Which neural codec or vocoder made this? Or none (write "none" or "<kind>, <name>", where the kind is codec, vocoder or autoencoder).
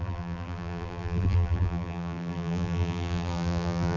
vocoder, BigVGAN v2